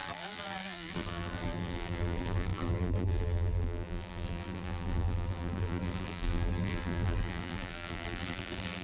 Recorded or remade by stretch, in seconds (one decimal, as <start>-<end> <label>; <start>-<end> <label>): 0.0-8.8 remade